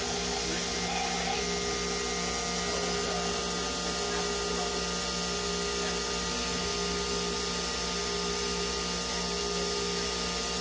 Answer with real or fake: real